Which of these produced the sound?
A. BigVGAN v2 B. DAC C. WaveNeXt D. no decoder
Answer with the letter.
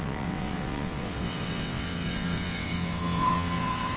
C